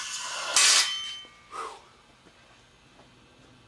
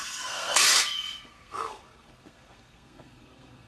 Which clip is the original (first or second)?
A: first